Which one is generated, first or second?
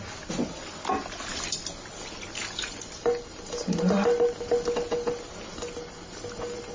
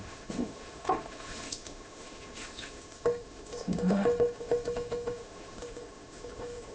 second